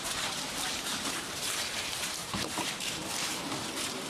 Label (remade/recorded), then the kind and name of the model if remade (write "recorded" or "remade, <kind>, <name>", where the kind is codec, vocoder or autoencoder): remade, vocoder, BigVGAN v2